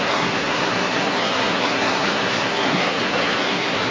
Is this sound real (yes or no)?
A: no